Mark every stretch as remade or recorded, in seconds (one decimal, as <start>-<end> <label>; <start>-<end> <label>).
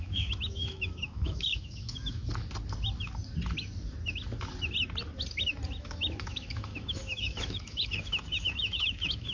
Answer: 0.0-2.2 remade; 2.2-5.8 recorded; 5.8-9.3 remade